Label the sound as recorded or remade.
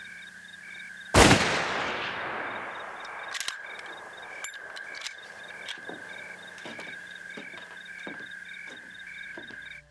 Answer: recorded